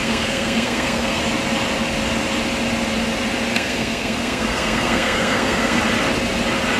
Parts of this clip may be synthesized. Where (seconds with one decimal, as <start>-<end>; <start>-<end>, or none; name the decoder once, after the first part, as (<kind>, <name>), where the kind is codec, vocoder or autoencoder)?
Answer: 0.0-1.2 (codec, SNAC); 3.5-5.8